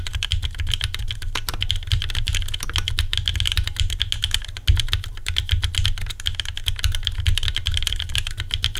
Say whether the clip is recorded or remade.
recorded